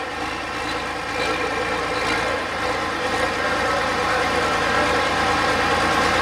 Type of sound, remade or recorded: recorded